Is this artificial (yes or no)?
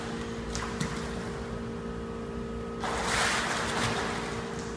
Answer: no